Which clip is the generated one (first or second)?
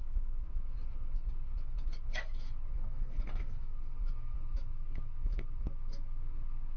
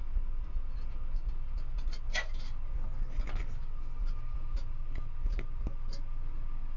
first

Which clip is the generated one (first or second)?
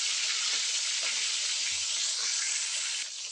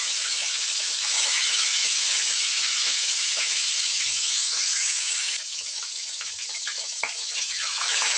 second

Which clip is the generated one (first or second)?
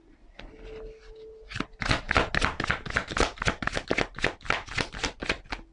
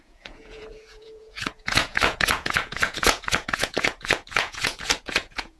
second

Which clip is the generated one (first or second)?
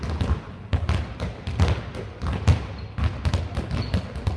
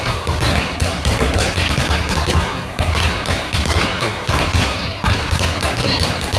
second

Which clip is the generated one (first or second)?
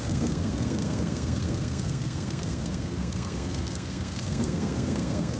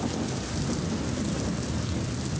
first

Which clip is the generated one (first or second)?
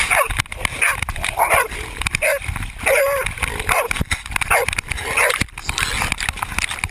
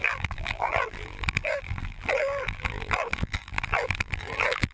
second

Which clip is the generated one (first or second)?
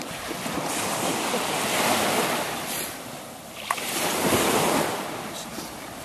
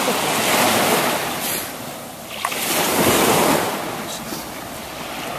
first